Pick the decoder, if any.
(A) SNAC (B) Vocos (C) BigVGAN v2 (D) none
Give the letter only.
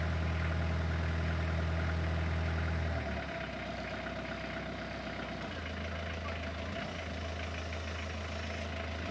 D